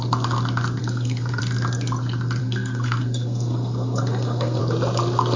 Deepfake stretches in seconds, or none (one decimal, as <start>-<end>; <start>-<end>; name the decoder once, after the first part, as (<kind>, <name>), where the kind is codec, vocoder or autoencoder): 0.8-1.4 (codec, SNAC); 2.4-4.6